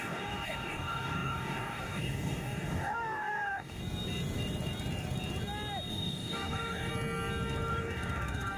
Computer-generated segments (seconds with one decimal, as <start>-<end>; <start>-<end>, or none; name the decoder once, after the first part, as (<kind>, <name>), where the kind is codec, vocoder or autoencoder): 0.0-3.8 (codec, DAC); 5.9-6.9; 7.7-8.6